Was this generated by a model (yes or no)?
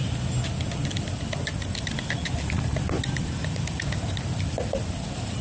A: no